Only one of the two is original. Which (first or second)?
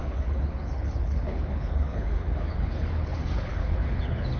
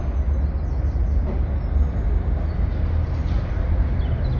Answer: second